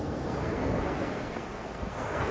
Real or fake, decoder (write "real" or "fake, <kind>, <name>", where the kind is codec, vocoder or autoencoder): fake, codec, SNAC